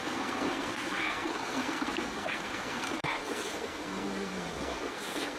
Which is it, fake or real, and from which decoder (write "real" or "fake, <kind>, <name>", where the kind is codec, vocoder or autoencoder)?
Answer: fake, codec, SNAC